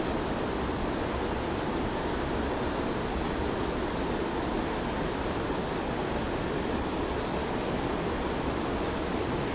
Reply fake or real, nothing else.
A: real